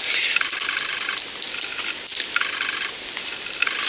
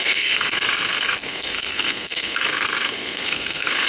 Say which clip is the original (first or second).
first